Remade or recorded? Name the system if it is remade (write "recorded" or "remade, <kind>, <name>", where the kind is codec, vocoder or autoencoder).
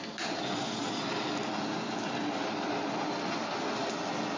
recorded